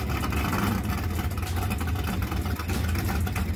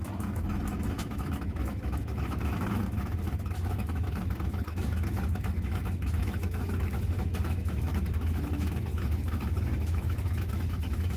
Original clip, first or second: first